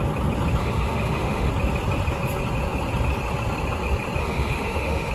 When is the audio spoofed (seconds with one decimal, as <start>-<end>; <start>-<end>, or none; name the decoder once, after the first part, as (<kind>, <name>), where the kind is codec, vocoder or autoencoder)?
0.6-1.5 (autoencoder, DAC-VAE); 4.2-5.1